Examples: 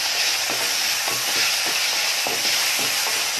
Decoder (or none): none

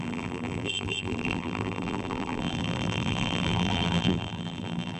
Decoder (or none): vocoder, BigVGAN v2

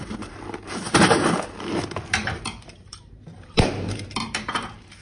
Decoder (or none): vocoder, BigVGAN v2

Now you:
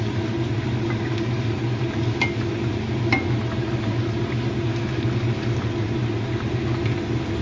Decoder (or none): none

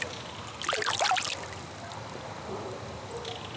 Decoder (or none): none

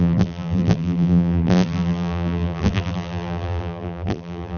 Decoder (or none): vocoder, BigVGAN v2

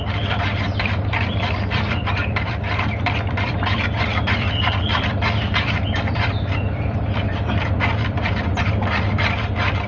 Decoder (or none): vocoder, BigVGAN v2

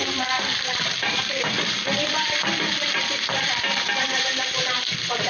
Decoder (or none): vocoder, BigVGAN v2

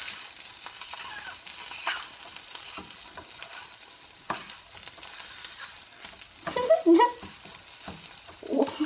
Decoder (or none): none